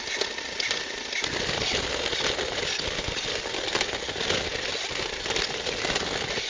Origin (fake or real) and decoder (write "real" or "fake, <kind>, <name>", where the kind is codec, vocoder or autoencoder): real